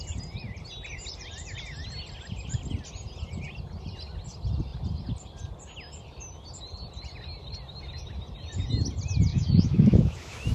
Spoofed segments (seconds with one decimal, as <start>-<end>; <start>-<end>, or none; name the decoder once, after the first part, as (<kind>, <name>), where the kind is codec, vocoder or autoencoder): 9.3-10.5 (autoencoder, DAC-VAE)